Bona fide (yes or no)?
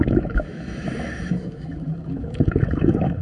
no